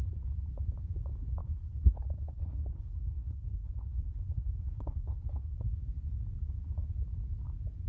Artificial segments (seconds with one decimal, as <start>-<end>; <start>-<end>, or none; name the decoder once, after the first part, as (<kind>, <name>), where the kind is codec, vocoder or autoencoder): 1.4-5.7 (codec, HILCodec)